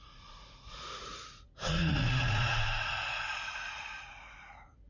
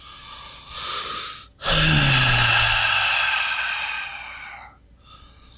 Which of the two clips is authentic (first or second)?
second